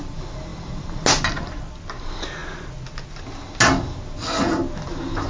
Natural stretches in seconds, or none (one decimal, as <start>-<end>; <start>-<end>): 0.0-5.3